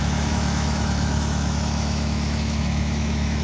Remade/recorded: remade